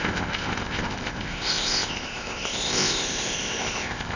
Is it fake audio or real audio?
fake